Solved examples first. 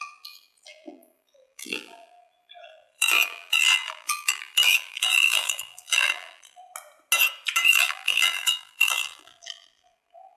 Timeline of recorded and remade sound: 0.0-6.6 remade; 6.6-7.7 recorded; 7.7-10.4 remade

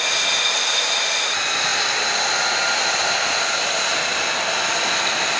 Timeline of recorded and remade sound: 0.0-5.4 recorded

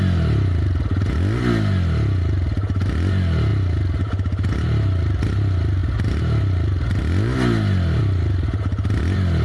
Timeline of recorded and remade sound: 0.0-9.4 recorded

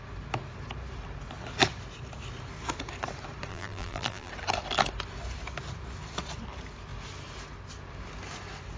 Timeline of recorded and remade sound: 0.0-3.5 recorded; 3.5-4.3 remade; 4.3-8.8 recorded

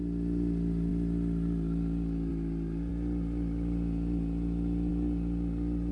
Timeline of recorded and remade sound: 0.0-5.9 recorded

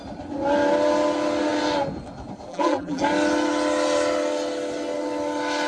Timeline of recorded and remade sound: 0.0-2.5 recorded; 2.5-3.0 remade; 3.0-5.7 recorded

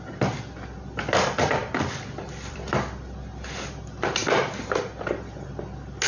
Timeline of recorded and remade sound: 0.0-1.6 recorded; 1.6-2.7 remade; 2.7-4.2 recorded; 4.2-4.8 remade; 4.8-6.1 recorded

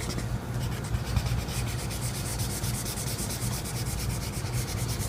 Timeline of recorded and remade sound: 0.0-2.3 remade; 2.3-3.0 recorded; 3.0-5.1 remade